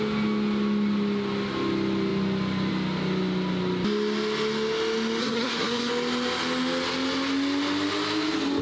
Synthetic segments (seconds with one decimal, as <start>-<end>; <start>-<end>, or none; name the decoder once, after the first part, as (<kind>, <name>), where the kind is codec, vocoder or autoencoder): 5.2-5.9 (codec, SNAC)